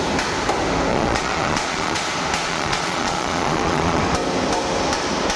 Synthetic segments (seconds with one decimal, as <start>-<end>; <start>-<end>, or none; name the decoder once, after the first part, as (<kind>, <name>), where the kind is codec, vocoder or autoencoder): 0.9-2.0 (vocoder, Vocos); 2.4-4.0